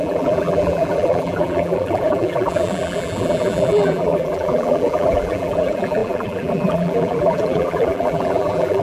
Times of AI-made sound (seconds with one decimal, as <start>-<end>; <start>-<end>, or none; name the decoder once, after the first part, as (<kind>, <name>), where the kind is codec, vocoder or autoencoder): 0.0-8.8 (vocoder, BigVGAN v2)

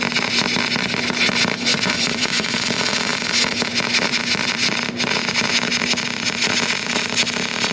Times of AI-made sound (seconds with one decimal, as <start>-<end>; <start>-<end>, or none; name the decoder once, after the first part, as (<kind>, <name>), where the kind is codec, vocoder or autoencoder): 1.7-2.6 (vocoder, Vocos)

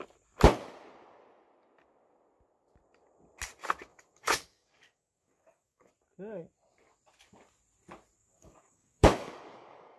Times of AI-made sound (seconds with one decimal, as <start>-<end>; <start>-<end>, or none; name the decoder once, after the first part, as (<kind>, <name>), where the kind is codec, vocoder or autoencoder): 3.9-5.9 (codec, DAC); 8.2-10.0

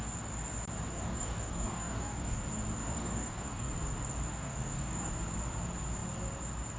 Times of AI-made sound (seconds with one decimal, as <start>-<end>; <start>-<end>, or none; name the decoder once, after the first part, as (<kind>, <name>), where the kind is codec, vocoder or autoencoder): 0.9-2.4 (codec, DAC); 2.8-3.7; 4.3-5.1